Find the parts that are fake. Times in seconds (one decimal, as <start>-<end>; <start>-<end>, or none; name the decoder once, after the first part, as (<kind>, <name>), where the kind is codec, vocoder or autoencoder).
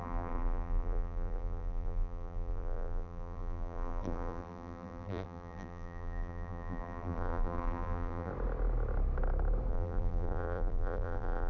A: 0.0-8.3 (vocoder, BigVGAN v2); 9.7-11.5